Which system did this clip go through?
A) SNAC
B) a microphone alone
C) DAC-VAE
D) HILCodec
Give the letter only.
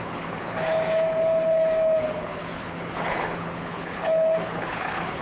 D